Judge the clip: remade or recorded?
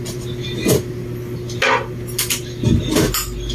recorded